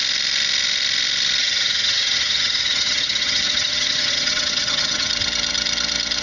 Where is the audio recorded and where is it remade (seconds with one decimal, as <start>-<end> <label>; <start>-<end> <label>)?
0.0-1.4 recorded; 1.4-5.1 remade; 5.1-6.2 recorded